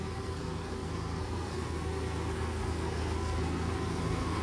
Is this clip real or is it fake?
fake